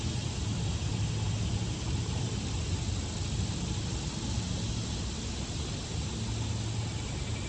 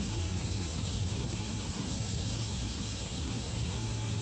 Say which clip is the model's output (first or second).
second